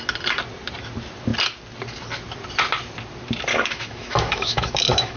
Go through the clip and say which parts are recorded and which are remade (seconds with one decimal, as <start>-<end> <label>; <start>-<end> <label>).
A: 0.0-3.5 recorded; 3.5-5.2 remade